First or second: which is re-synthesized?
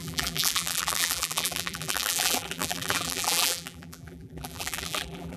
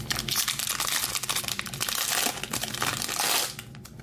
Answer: first